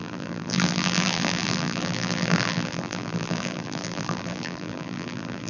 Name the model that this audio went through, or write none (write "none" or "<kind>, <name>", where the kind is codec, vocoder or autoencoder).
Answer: vocoder, BigVGAN v2